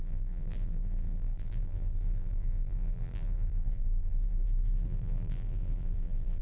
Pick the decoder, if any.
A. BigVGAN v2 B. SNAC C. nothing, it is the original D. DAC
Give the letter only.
A